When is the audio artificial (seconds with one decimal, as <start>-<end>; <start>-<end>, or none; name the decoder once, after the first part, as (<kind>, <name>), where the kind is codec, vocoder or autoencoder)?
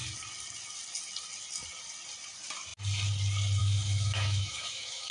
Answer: 3.6-5.1 (autoencoder, DAC-VAE)